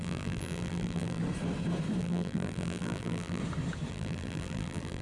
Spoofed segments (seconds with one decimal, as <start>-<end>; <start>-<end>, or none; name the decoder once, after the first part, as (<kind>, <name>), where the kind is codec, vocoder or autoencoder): 0.0-1.2 (vocoder, BigVGAN v2); 2.0-3.4; 3.9-5.0

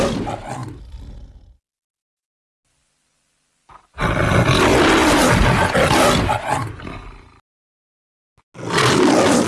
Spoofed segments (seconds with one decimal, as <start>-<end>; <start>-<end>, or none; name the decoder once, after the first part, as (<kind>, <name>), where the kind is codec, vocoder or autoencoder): none

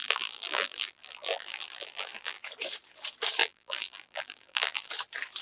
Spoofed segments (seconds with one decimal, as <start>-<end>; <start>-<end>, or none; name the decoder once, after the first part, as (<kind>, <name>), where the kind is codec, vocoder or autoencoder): 0.0-2.4 (vocoder, BigVGAN v2); 3.4-4.9

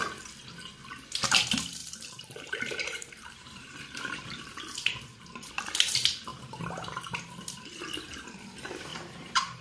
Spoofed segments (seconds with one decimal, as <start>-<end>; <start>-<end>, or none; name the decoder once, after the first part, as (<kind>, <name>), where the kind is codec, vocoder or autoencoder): 1.8-5.5 (vocoder, BigVGAN v2); 6.3-7.2; 8.9-9.6

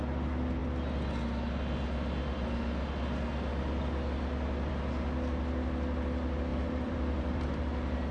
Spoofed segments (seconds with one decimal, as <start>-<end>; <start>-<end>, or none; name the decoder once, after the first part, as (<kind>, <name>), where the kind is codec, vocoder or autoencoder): 6.5-7.6 (vocoder, BigVGAN v2)

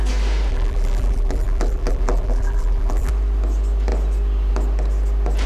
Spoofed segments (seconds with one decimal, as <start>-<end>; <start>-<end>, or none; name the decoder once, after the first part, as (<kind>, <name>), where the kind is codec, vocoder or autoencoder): 0.5-3.1 (vocoder, BigVGAN v2)

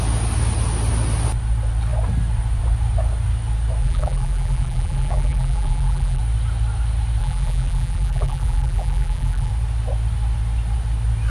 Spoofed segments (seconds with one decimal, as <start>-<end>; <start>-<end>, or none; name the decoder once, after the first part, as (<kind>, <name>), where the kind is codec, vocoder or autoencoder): 3.8-6.2 (vocoder, BigVGAN v2); 7.2-9.5